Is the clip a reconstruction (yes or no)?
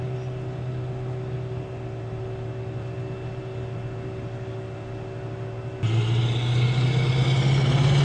no